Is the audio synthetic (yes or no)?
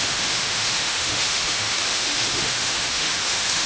yes